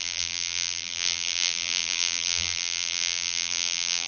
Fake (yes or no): yes